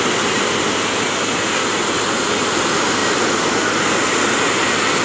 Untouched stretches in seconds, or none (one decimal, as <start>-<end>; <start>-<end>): 0.0-5.0